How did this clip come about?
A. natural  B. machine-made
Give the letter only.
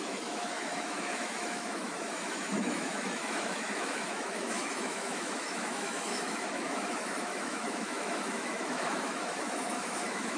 B